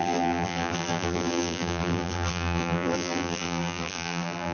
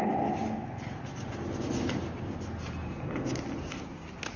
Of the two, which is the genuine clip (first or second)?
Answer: second